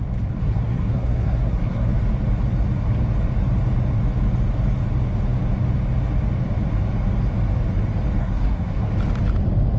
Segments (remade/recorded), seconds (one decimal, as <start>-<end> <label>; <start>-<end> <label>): 0.0-0.4 recorded; 0.4-1.9 remade; 1.9-8.2 recorded; 8.2-8.9 remade; 8.9-9.8 recorded